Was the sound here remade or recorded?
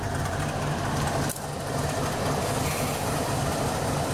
recorded